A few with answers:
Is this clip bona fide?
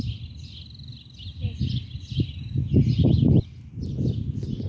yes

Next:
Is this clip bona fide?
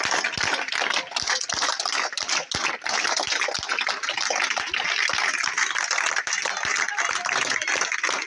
yes